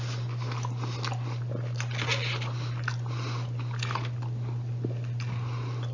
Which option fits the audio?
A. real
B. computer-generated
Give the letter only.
A